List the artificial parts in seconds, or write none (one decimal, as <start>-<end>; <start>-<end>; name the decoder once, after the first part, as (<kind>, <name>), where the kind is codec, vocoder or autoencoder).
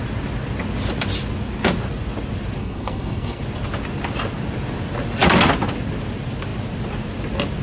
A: 2.6-3.4 (codec, SNAC)